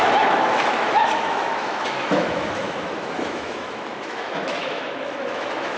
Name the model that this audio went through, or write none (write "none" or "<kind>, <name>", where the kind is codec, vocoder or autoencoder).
autoencoder, DAC-VAE